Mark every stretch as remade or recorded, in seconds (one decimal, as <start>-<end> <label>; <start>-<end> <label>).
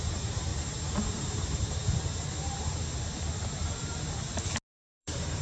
0.0-1.8 remade; 1.8-5.0 recorded; 5.0-5.4 remade